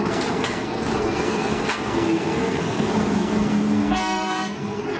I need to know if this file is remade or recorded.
remade